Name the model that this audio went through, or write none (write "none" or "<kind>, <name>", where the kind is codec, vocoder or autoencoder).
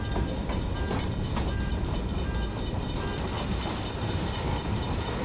none